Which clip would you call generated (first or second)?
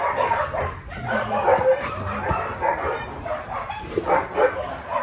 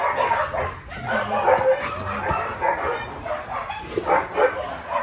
first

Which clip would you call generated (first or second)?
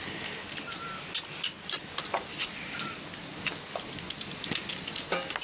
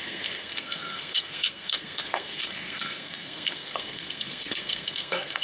second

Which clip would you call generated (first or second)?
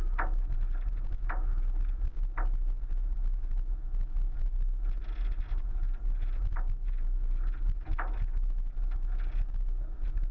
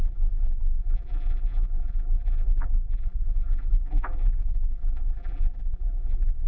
second